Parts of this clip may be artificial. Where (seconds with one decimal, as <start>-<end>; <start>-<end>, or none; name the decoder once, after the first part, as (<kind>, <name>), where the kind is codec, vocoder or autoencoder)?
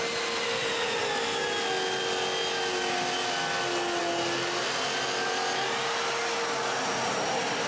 none